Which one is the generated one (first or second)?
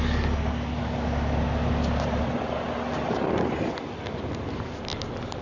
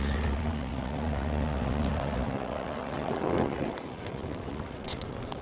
second